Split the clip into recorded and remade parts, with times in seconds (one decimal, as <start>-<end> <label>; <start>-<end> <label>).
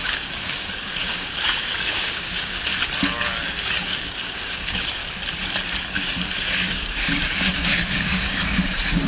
0.0-2.7 remade; 2.7-3.2 recorded; 3.2-5.0 remade; 5.0-5.8 recorded; 5.8-9.1 remade